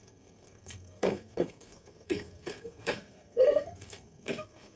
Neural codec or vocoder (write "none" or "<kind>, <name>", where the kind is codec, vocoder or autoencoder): codec, SNAC